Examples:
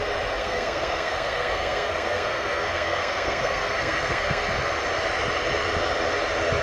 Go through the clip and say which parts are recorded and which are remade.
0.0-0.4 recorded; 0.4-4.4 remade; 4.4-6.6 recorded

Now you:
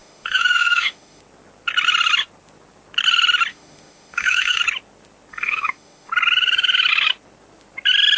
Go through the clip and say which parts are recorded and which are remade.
0.0-1.2 remade; 1.2-3.5 recorded; 3.5-4.6 remade; 4.6-5.3 recorded; 5.3-6.1 remade; 6.1-8.2 recorded

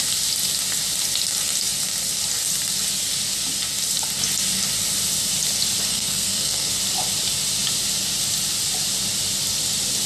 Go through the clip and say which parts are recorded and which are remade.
0.0-5.9 recorded; 5.9-6.7 remade; 6.7-10.1 recorded

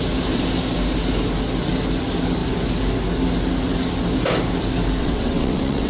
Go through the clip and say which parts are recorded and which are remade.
0.0-5.0 recorded; 5.0-5.9 remade

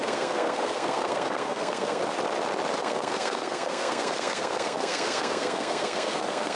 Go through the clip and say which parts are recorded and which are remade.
0.0-2.0 remade; 2.0-2.8 recorded; 2.8-6.6 remade

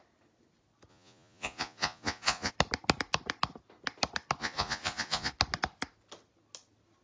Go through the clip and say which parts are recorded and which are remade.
0.0-0.9 recorded; 0.9-2.5 remade; 2.5-4.4 recorded; 4.4-5.3 remade; 5.3-7.0 recorded

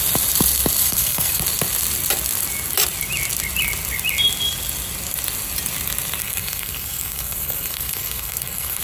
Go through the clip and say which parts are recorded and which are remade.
0.0-0.8 recorded; 0.8-1.4 remade; 1.4-6.2 recorded; 6.2-8.8 remade

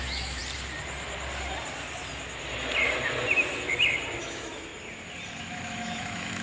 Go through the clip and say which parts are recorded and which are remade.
0.0-0.4 remade; 0.4-4.2 recorded; 4.2-4.7 remade; 4.7-5.4 recorded; 5.4-6.4 remade